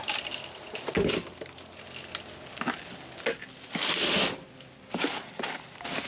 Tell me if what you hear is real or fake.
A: real